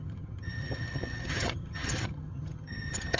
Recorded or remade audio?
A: remade